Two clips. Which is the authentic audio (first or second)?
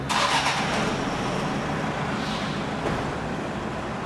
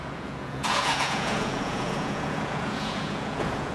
first